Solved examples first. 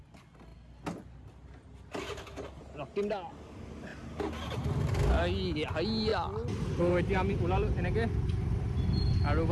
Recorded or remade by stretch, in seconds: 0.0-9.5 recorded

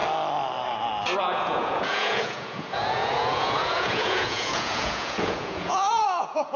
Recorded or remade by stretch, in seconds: 0.0-1.2 recorded; 1.2-6.6 remade

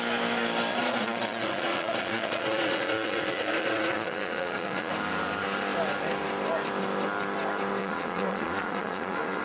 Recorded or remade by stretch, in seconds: 0.0-0.7 recorded; 0.7-4.9 remade; 4.9-7.8 recorded; 7.8-9.4 remade

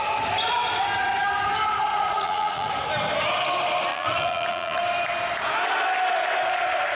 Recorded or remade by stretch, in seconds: 0.0-1.9 recorded; 1.9-2.7 remade; 2.7-3.9 recorded; 3.9-4.8 remade; 4.8-6.9 recorded

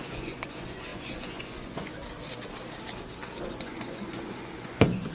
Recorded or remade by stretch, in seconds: 0.0-1.9 remade; 1.9-3.4 recorded; 3.4-5.1 remade

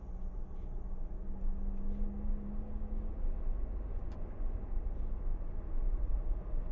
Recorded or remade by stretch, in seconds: 0.0-3.9 recorded; 3.9-4.7 remade; 4.7-6.7 recorded